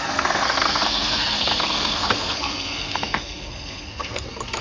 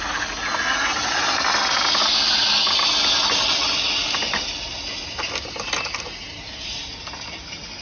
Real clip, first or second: second